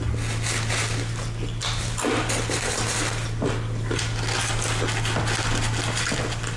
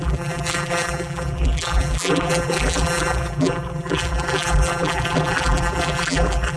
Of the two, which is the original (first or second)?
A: first